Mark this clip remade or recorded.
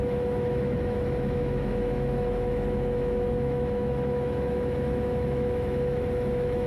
remade